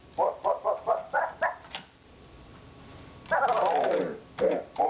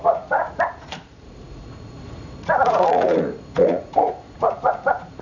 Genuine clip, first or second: first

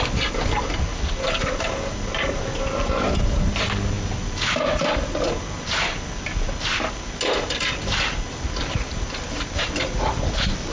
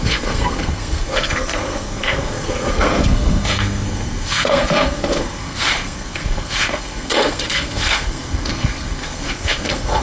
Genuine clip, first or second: first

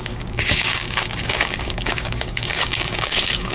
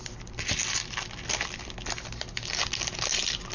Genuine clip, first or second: second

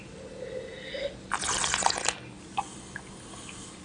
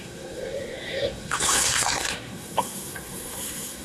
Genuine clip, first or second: first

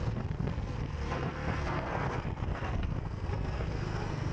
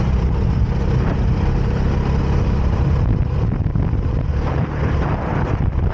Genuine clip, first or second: second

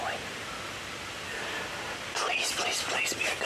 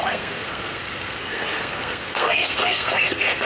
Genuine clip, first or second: first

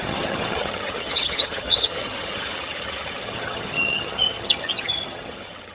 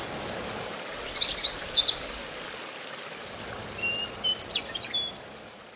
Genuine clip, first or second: second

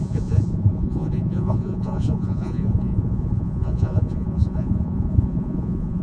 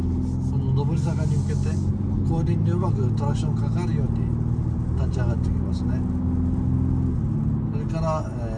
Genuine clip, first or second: second